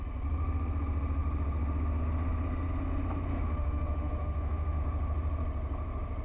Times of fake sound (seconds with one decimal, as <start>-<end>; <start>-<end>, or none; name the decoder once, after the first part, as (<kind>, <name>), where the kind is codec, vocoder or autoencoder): 3.3-4.8 (autoencoder, DAC-VAE)